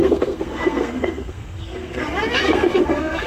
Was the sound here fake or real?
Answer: fake